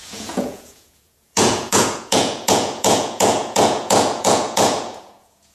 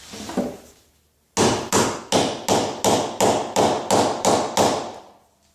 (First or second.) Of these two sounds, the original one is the second